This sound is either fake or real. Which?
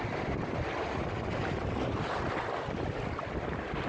real